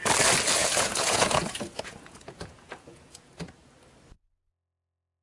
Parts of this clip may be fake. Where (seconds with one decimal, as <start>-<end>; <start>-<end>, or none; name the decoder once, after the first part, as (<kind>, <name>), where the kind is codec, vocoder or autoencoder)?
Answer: 0.6-3.3 (vocoder, Vocos)